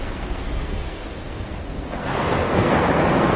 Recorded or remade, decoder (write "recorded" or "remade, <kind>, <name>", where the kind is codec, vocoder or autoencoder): remade, codec, SNAC